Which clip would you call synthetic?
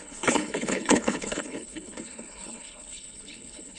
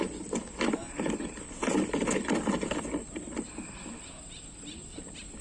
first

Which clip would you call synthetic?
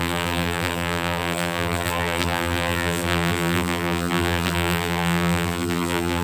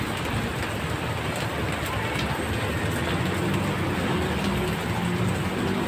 first